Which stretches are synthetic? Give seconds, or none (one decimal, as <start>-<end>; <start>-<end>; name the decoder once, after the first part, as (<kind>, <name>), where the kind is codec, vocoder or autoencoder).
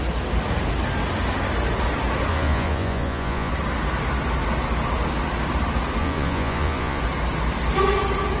2.3-3.5 (vocoder, Vocos); 6.0-7.0